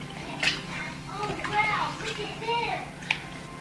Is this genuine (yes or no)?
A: yes